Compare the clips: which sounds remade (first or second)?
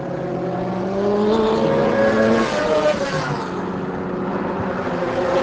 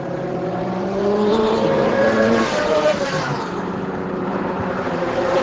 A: second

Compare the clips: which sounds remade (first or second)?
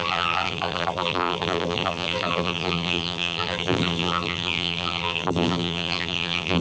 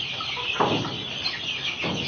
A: first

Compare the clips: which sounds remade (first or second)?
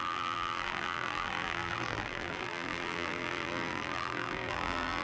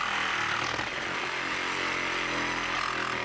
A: first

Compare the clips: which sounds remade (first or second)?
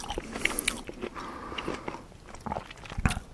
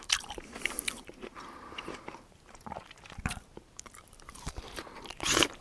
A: second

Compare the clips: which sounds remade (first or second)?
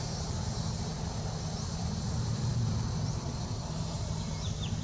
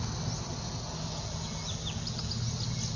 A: first